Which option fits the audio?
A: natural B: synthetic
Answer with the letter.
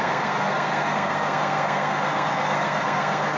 B